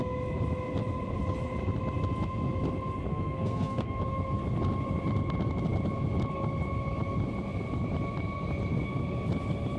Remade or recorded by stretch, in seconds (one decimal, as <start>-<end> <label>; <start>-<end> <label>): 0.0-3.1 recorded; 3.1-4.0 remade; 4.0-9.8 recorded